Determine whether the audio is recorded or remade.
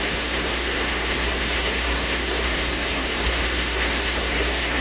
remade